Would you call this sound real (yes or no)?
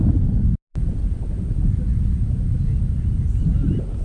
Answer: yes